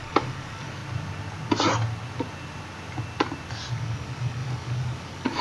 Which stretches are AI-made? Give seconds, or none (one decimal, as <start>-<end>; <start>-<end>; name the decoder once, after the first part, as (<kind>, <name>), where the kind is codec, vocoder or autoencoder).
0.0-0.8 (codec, DAC); 3.7-5.4